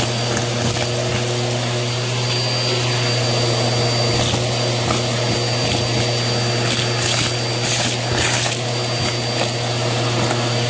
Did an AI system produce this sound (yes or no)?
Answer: no